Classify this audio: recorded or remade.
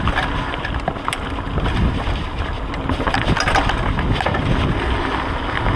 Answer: recorded